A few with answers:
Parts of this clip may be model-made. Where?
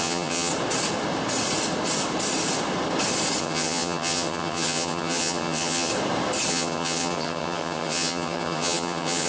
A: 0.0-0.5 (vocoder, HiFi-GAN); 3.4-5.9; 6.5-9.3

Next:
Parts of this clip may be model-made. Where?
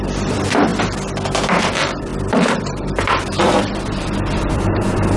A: 0.0-0.7 (vocoder, BigVGAN v2); 1.7-5.2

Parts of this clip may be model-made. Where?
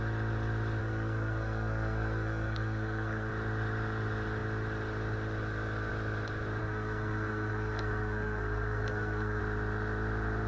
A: 0.8-3.3 (codec, SNAC); 6.6-9.4